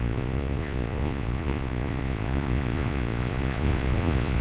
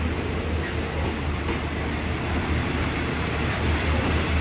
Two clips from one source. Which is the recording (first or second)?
second